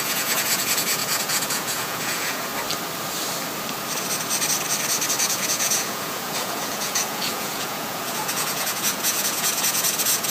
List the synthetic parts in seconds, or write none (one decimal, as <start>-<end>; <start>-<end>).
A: 0.0-2.5; 5.2-10.3